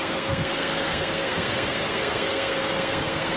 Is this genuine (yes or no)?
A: no